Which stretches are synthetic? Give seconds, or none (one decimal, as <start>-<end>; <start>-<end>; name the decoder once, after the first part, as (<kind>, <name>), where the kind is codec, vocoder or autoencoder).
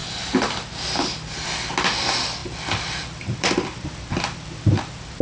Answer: 2.4-4.8 (vocoder, BigVGAN v2)